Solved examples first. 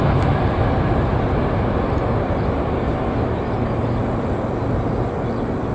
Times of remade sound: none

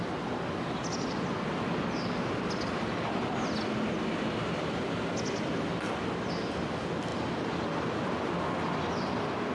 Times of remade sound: none

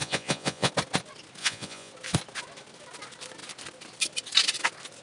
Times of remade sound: 0.0-0.7 (vocoder, Vocos); 1.4-1.9

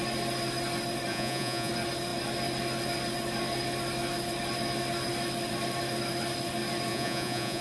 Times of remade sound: 1.1-1.7 (vocoder, Vocos); 6.9-7.6

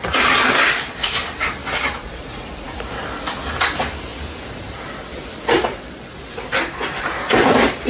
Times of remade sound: 2.0-2.9 (vocoder, Vocos)